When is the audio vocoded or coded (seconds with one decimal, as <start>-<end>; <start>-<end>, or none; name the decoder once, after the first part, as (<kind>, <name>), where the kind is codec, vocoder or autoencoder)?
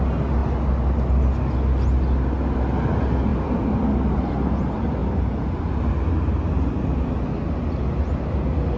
none